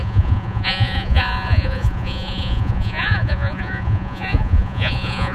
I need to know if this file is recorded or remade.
remade